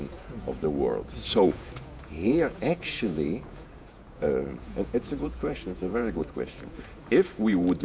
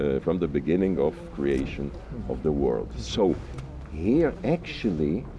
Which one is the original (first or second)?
second